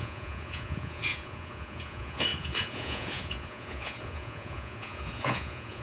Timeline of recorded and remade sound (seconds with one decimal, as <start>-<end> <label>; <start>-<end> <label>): 0.0-5.8 remade